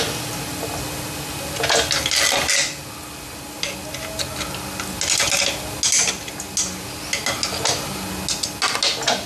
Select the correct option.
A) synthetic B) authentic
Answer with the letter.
B